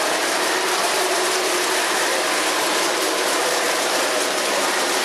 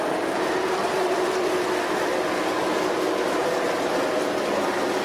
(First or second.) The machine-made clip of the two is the first